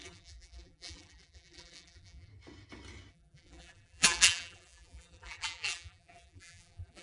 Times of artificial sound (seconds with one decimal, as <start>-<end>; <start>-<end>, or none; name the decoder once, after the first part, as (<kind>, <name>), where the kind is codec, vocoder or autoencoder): 0.0-2.3 (vocoder, BigVGAN v2); 3.1-7.0